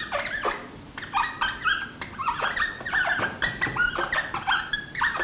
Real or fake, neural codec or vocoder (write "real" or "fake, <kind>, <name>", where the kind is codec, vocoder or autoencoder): real